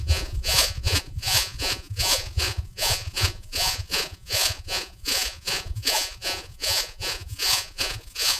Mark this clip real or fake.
fake